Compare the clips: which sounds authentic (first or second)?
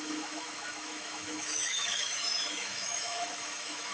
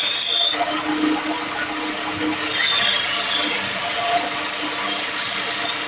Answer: second